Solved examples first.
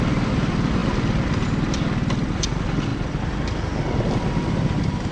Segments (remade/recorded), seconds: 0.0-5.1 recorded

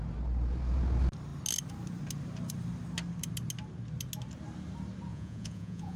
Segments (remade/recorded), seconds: 0.0-5.1 recorded; 5.1-6.0 remade

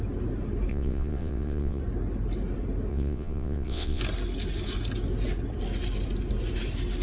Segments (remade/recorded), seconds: 0.0-0.7 recorded; 0.7-1.8 remade; 1.8-2.9 recorded; 2.9-4.0 remade; 4.0-7.0 recorded